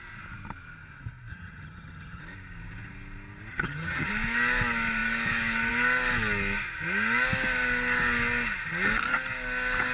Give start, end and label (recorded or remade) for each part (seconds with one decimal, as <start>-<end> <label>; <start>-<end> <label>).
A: 0.0-1.3 recorded; 1.3-2.2 remade; 2.2-3.5 recorded; 3.5-4.1 remade; 4.1-9.9 recorded